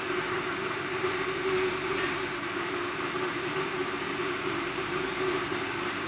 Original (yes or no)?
no